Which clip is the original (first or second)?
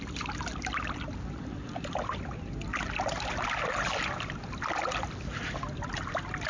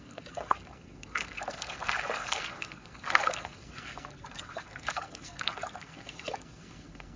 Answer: first